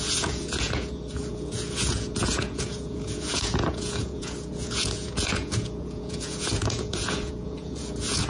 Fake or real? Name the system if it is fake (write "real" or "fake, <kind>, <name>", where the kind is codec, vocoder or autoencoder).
fake, vocoder, Vocos